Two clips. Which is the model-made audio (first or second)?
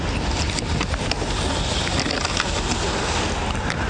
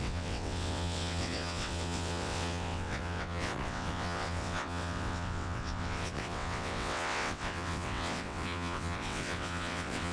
second